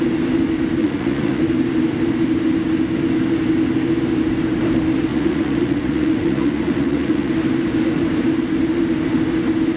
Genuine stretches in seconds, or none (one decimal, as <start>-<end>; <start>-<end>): 0.0-0.8; 1.4-5.1; 7.3-9.8